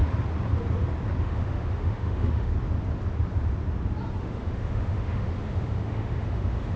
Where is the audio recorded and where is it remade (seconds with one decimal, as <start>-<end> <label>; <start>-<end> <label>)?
0.0-1.2 recorded; 1.2-2.5 remade; 2.5-4.2 recorded; 4.2-6.8 remade